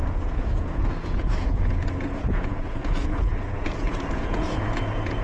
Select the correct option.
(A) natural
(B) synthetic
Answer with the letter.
B